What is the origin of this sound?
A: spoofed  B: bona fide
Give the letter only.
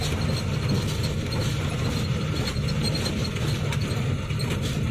B